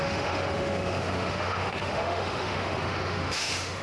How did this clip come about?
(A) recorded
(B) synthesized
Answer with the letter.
B